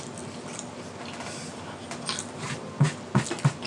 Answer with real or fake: real